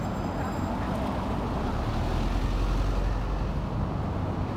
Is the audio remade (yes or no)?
no